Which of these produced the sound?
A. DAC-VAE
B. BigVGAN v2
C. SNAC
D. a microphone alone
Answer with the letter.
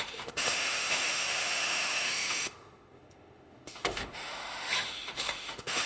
A